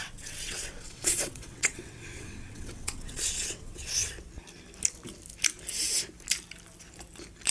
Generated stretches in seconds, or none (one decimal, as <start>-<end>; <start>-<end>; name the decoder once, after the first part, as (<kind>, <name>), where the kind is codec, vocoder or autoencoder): 0.0-4.1 (vocoder, WaveNeXt)